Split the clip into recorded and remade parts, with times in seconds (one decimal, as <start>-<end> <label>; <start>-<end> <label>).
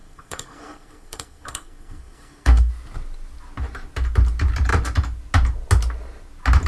0.0-2.7 remade; 2.7-6.7 recorded